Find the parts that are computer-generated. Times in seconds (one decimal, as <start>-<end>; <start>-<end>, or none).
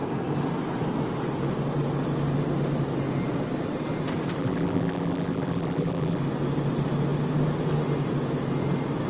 4.4-6.2